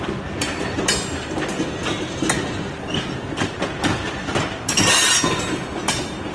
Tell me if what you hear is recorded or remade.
recorded